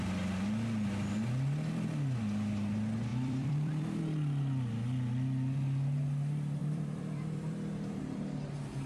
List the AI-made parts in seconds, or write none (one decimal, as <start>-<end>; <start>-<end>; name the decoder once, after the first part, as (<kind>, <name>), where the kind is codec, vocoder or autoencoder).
3.1-4.0 (vocoder, BigVGAN v2); 6.6-8.0